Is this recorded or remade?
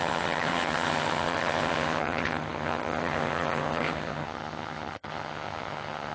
remade